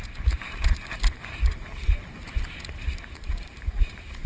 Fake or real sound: fake